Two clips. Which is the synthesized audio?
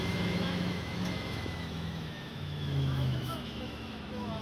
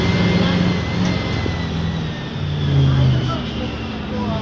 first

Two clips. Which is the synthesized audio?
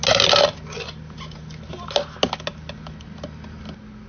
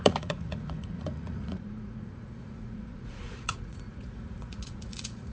second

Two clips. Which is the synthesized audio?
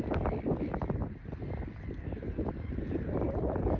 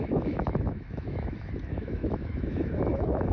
second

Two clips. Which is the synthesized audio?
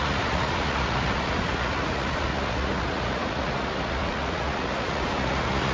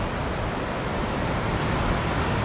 first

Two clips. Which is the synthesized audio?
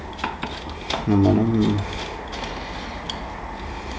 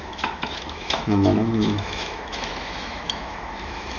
second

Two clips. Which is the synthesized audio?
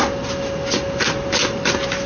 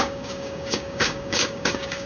second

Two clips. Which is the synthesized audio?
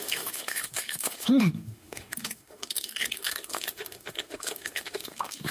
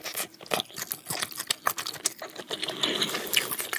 first